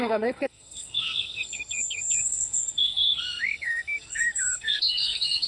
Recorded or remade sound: remade